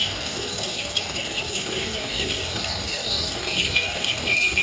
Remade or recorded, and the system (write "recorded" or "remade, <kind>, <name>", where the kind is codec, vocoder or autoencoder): remade, codec, DAC